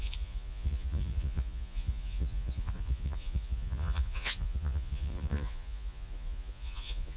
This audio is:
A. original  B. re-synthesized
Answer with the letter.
B